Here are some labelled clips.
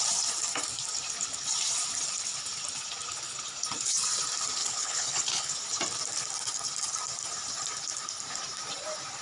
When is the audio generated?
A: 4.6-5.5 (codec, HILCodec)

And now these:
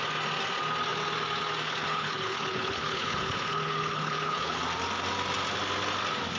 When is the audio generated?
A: 1.8-4.6 (codec, HILCodec)

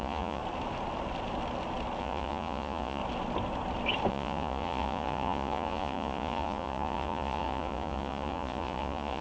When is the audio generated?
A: 0.0-0.4 (vocoder, Vocos); 2.0-3.0; 4.1-9.2

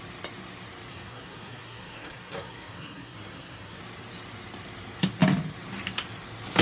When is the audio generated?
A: 0.9-3.8 (codec, SNAC)

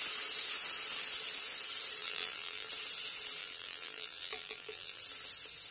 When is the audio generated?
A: 2.0-2.7 (vocoder, BigVGAN v2); 3.4-5.0

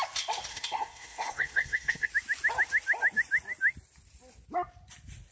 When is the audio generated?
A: 0.5-2.1 (codec, SNAC)

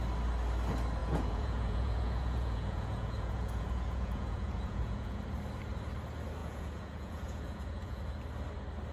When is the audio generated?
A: 1.0-5.2 (vocoder, Vocos); 6.4-8.0

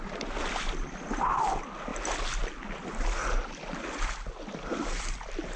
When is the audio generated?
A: none